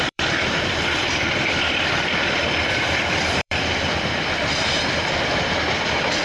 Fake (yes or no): yes